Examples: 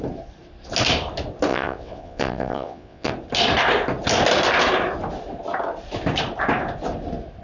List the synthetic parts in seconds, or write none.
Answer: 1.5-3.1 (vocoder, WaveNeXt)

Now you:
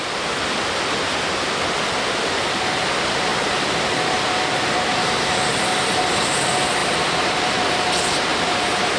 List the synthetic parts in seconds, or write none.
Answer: 3.3-4.9 (vocoder, BigVGAN v2); 6.8-7.9; 8.3-9.0

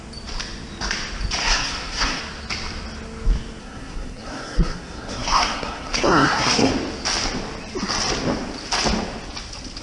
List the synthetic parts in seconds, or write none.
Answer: 1.4-2.2 (codec, SNAC); 3.6-6.7

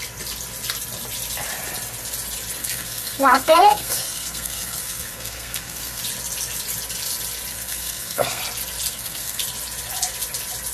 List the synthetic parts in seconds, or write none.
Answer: 2.6-6.0 (codec, SNAC); 7.5-8.4; 8.9-9.4